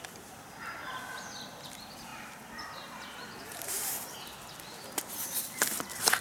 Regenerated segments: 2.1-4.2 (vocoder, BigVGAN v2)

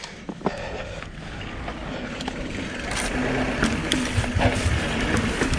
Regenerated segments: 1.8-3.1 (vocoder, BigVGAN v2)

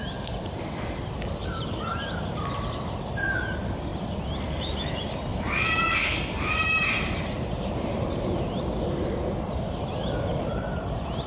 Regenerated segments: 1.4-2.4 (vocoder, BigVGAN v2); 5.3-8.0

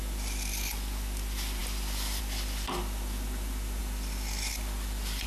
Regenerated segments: 3.8-5.3 (vocoder, BigVGAN v2)

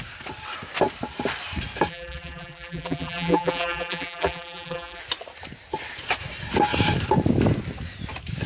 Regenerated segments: 1.9-5.0 (vocoder, BigVGAN v2)

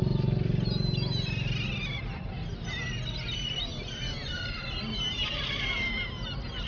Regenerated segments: none

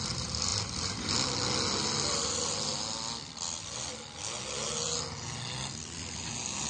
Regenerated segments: none

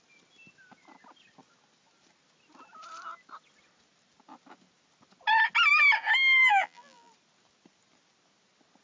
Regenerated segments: 6.4-7.1 (vocoder, BigVGAN v2)